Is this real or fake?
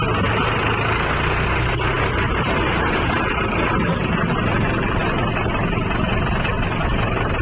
real